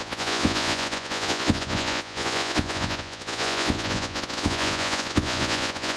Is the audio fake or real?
fake